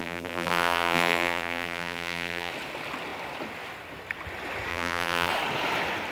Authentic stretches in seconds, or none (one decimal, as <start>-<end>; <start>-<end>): 2.5-4.7; 5.3-6.1